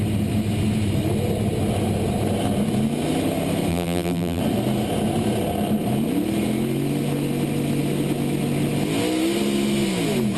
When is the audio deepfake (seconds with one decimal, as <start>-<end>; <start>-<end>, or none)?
3.7-4.4